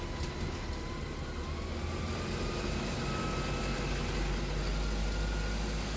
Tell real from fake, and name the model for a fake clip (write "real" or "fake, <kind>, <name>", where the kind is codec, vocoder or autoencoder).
real